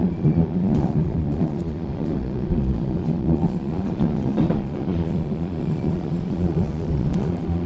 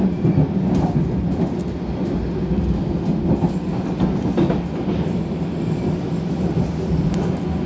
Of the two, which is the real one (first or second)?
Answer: second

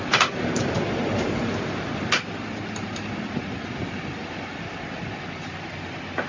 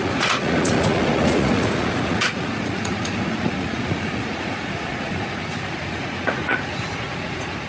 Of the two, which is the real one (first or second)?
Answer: first